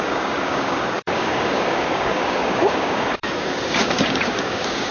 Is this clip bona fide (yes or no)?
no